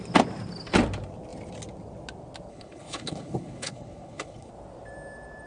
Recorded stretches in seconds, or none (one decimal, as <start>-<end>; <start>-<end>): 0.0-2.5; 4.5-5.5